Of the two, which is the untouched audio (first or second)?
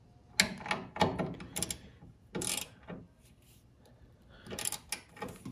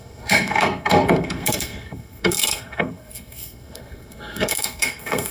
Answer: first